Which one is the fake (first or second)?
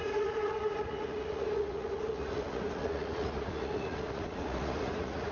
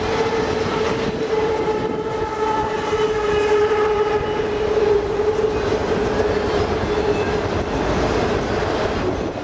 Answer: first